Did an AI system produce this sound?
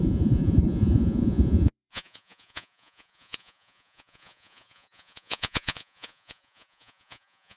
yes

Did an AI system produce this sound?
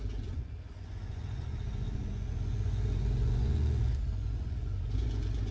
yes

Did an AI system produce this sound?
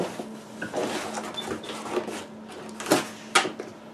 no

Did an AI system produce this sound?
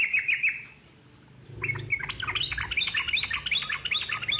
no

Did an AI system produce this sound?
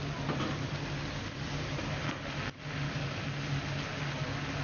no